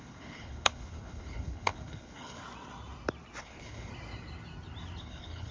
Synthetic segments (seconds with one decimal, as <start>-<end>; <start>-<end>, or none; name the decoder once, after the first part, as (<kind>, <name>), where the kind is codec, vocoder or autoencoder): 0.0-2.4 (codec, HILCodec); 3.4-3.9; 5.0-5.5